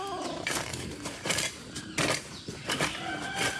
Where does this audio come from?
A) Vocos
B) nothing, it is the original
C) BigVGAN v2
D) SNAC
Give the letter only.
B